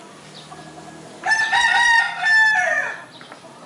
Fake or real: real